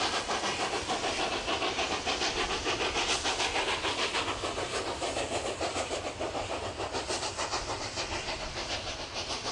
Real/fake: real